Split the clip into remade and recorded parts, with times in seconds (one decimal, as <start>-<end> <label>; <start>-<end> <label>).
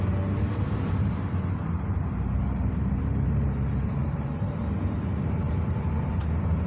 0.0-6.7 remade